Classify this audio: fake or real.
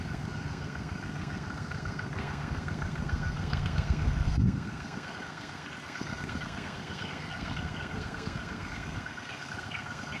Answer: fake